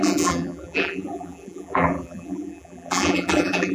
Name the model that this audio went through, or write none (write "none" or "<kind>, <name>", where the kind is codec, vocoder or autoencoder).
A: vocoder, BigVGAN v2